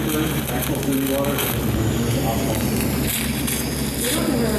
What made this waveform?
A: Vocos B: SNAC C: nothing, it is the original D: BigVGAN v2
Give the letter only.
C